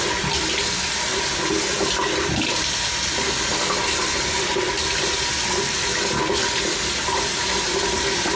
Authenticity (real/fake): real